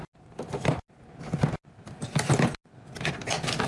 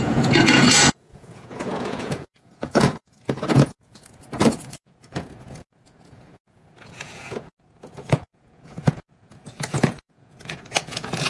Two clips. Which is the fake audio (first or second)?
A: second